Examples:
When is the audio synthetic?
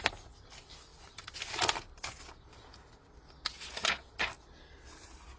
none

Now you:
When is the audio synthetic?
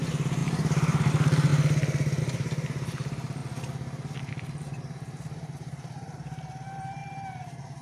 0.0-1.5 (vocoder, BigVGAN v2); 2.2-3.4; 4.3-7.8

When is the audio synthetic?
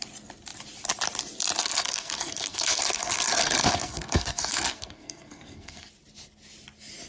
1.6-5.9 (codec, SNAC)